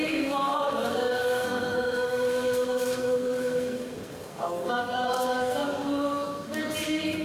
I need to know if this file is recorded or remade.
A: remade